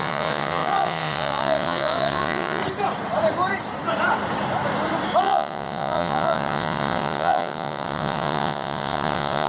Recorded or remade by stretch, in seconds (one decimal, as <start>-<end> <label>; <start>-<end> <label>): 0.0-2.6 remade; 2.6-5.2 recorded; 5.2-9.5 remade

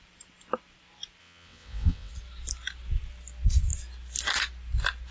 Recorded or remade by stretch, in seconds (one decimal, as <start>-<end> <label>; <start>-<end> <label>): 0.0-1.2 recorded; 1.2-2.1 remade; 2.1-5.1 recorded

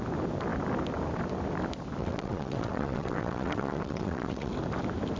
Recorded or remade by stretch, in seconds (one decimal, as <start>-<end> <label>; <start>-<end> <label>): 0.0-2.0 recorded; 2.0-4.5 remade; 4.5-5.2 recorded

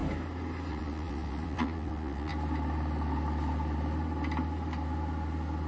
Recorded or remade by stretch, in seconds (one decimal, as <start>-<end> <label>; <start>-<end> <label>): 0.0-0.7 recorded; 0.7-2.3 remade; 2.3-5.7 recorded

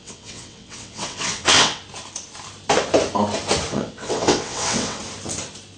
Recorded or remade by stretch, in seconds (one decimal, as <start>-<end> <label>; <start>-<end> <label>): 0.0-1.8 remade; 1.8-3.7 recorded; 3.7-5.0 remade; 5.0-5.8 recorded